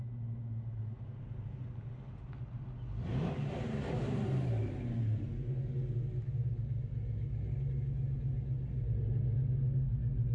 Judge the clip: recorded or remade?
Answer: recorded